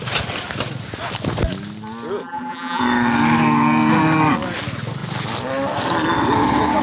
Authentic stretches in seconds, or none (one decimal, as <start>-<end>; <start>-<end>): 0.0-2.2; 2.8-6.8